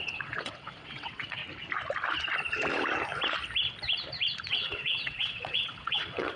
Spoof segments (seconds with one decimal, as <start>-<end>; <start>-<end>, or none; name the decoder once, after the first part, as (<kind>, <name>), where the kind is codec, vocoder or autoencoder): 0.0-1.4 (vocoder, WaveNeXt); 4.5-6.4